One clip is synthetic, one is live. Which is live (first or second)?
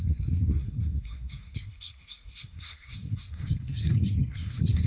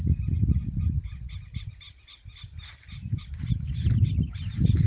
second